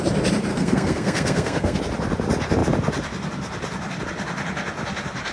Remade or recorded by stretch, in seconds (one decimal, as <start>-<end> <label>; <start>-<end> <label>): 0.0-0.5 recorded; 0.5-1.8 remade; 1.8-5.3 recorded